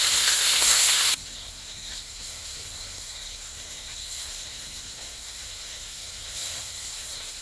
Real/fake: fake